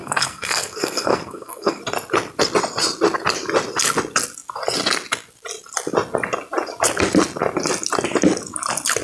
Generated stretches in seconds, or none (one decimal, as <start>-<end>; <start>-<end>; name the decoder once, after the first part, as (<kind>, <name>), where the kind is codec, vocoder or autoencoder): 0.0-1.8 (codec, SNAC)

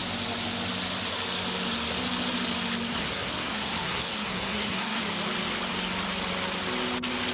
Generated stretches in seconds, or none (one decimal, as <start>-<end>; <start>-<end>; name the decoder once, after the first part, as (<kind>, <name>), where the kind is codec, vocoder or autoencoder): 3.0-5.0 (codec, SNAC)

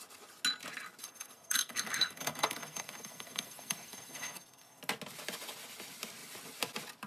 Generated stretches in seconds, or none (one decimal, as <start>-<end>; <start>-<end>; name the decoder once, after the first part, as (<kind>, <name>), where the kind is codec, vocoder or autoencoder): 1.0-4.8 (codec, SNAC)

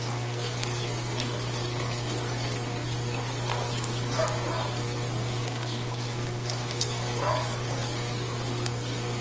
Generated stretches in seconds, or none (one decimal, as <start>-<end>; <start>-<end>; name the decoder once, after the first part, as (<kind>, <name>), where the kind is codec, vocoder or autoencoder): 0.0-9.2 (codec, SNAC)